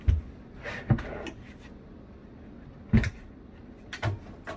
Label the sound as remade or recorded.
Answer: recorded